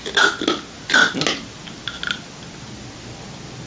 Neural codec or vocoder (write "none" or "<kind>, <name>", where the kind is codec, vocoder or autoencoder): none